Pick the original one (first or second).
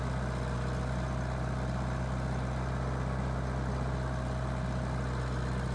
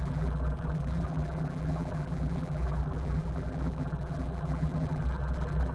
first